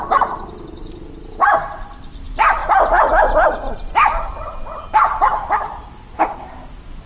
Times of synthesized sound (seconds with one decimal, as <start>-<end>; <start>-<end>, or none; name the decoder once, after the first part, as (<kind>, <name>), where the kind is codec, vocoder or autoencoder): none